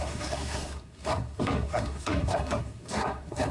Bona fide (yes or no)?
no